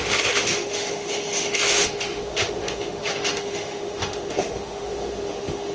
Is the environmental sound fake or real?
fake